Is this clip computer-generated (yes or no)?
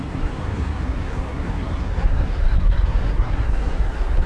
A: yes